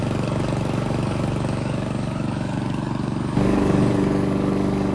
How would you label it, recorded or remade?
remade